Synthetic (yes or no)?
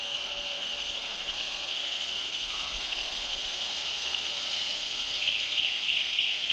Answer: yes